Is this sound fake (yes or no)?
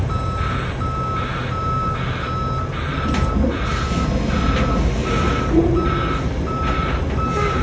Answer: no